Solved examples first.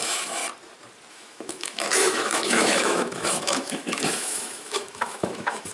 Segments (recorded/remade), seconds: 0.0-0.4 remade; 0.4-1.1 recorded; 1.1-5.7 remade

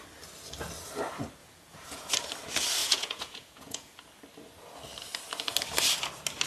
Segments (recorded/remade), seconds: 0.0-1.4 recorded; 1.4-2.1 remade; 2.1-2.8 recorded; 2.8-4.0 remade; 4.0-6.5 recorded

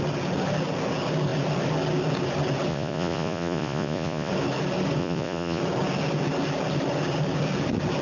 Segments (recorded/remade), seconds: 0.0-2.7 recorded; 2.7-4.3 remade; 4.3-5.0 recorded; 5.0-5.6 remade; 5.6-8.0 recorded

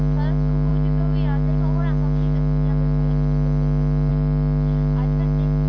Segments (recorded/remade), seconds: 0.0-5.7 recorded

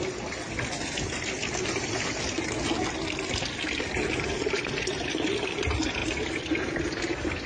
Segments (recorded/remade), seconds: 0.0-7.5 recorded